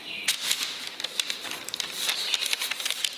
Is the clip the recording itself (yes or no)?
yes